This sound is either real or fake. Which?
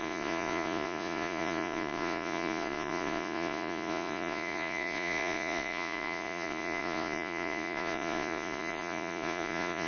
fake